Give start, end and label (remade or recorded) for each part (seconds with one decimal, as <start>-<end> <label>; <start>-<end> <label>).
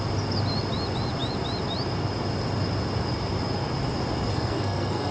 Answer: 0.0-4.3 recorded; 4.3-5.1 remade